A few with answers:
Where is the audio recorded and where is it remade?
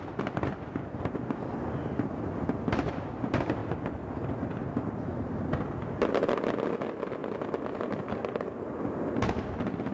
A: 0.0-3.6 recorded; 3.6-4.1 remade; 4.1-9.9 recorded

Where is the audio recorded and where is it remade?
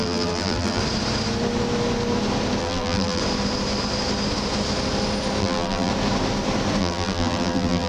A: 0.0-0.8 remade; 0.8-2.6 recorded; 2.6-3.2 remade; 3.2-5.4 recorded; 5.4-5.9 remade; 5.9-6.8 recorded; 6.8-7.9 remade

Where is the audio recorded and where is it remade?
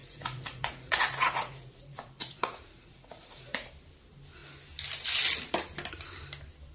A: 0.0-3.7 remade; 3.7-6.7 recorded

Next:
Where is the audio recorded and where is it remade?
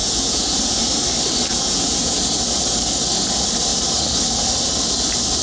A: 0.0-0.8 remade; 0.8-1.5 recorded; 1.5-2.2 remade; 2.2-5.4 recorded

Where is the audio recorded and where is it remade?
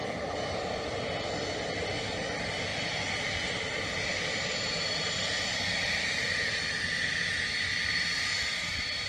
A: 0.0-9.1 recorded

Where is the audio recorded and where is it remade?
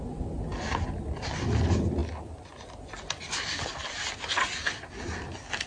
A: 0.0-5.7 recorded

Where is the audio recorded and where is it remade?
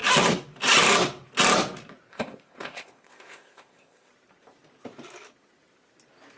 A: 0.0-2.1 recorded; 2.1-4.1 remade; 4.1-6.4 recorded